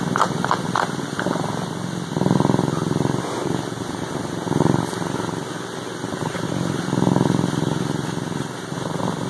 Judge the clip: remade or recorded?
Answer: recorded